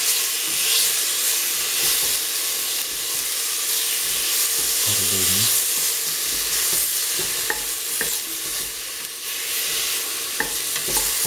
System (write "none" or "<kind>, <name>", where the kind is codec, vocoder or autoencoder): none